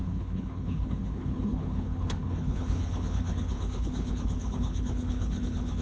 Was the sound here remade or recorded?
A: remade